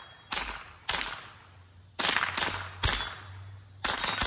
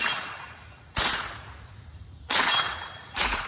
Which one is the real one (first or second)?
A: first